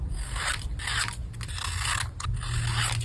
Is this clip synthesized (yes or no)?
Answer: no